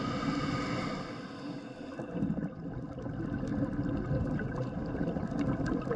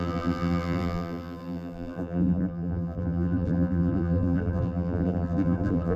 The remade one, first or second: second